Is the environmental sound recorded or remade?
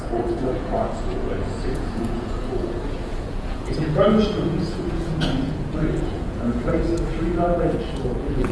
remade